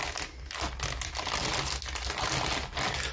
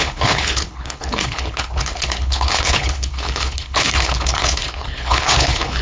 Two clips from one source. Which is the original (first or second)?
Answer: first